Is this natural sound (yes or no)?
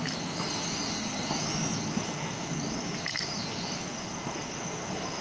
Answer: yes